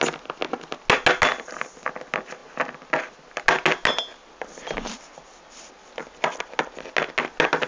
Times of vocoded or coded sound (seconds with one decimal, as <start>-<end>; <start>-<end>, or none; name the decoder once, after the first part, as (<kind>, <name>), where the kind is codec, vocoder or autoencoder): 1.3-1.9 (vocoder, BigVGAN v2)